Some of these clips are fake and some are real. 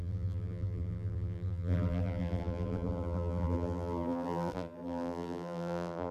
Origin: fake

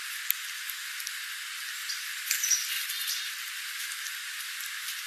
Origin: real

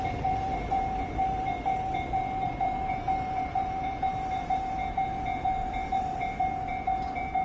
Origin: fake